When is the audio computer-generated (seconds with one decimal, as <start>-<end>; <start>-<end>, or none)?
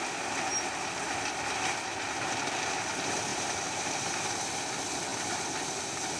3.3-4.3